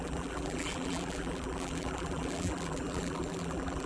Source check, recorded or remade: remade